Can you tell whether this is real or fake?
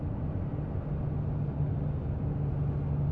real